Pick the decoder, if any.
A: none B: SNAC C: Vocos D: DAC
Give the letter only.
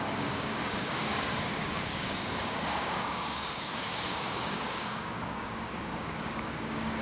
D